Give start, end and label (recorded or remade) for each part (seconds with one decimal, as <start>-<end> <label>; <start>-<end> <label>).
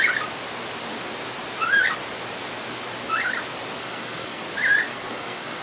0.0-3.8 recorded; 3.8-4.4 remade; 4.4-4.9 recorded; 4.9-5.6 remade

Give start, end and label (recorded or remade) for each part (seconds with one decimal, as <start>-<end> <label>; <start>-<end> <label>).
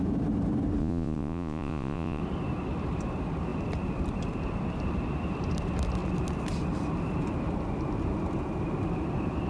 0.0-0.8 recorded; 0.8-2.2 remade; 2.2-9.5 recorded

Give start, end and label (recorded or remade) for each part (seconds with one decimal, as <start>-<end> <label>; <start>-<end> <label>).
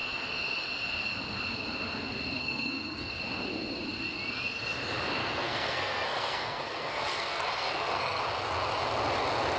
0.0-2.4 recorded; 2.4-3.2 remade; 3.2-5.2 recorded; 5.2-8.2 remade; 8.2-9.6 recorded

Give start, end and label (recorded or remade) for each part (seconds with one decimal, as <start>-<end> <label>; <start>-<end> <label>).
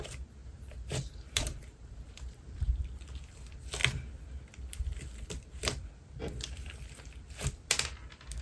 0.0-0.4 recorded; 0.4-2.8 remade; 2.8-8.4 recorded